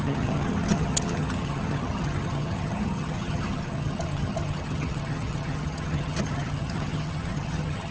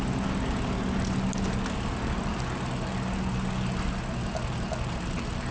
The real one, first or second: second